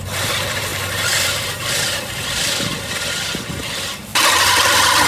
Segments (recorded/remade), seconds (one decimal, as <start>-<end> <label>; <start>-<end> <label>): 0.0-0.7 remade; 0.7-1.3 recorded; 1.3-2.7 remade; 2.7-3.6 recorded; 3.6-5.1 remade